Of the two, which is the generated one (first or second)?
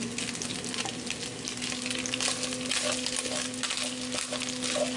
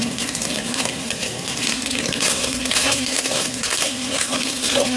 second